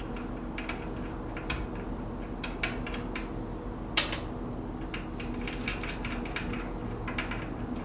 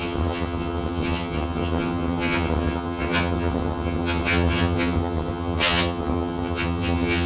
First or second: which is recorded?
first